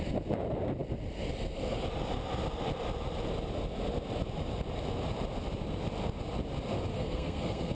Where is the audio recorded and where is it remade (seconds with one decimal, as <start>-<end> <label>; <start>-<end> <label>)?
0.0-6.9 recorded; 6.9-7.7 remade